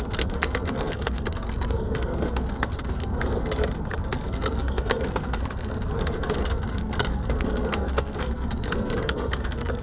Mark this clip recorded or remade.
remade